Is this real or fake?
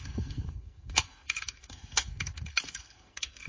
fake